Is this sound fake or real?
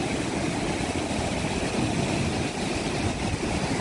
real